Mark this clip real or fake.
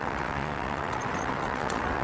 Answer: fake